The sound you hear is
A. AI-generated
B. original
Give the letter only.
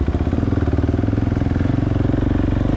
B